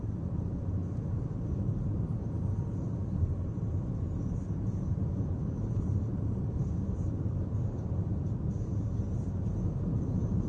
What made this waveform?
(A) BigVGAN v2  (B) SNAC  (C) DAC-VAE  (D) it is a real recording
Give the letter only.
A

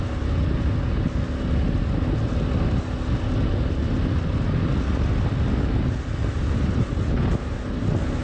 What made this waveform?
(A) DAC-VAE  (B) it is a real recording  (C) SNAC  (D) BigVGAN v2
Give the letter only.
B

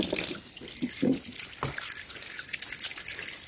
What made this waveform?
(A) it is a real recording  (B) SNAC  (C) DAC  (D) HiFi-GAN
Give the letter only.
A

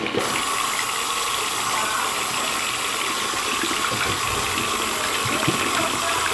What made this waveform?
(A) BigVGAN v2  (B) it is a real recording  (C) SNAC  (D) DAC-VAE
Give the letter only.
B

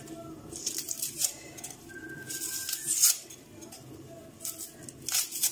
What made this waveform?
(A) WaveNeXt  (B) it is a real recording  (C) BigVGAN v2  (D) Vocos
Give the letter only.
B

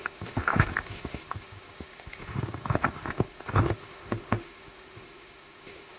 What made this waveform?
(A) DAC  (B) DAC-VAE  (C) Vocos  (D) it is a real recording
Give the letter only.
B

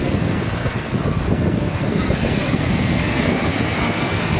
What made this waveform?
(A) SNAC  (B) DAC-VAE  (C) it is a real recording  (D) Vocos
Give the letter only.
A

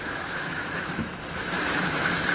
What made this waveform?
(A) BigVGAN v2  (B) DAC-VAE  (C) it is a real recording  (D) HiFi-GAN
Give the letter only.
B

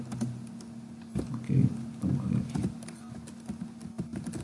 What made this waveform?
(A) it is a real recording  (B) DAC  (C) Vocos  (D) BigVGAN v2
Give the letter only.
A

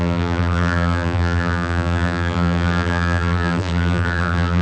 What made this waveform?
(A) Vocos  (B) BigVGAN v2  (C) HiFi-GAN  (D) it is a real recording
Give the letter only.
B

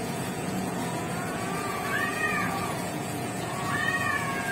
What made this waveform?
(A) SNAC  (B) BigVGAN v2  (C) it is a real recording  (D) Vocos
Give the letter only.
D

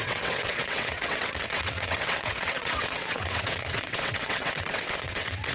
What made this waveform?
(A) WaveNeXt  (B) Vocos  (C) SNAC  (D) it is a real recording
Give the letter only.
A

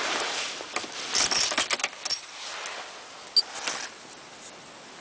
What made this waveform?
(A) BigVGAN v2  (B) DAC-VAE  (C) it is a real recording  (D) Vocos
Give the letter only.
C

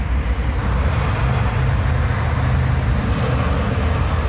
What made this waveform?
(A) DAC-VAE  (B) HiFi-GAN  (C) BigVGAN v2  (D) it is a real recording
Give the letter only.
D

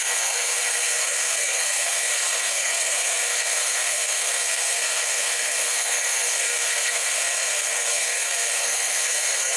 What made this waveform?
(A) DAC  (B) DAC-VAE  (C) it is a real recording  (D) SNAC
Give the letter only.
D